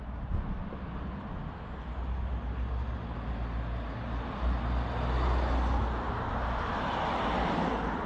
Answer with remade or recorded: recorded